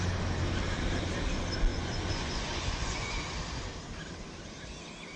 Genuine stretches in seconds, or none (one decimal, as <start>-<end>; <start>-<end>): 0.0-1.7; 3.2-5.2